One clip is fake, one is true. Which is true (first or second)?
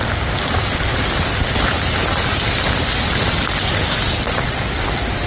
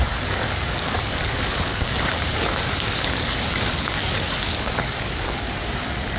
first